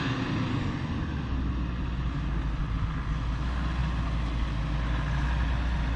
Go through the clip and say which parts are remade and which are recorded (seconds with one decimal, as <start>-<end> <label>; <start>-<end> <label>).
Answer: 0.0-6.0 recorded